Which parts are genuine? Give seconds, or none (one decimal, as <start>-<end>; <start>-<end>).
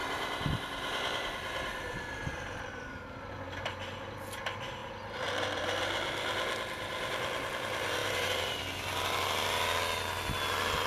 3.4-8.0; 8.6-10.9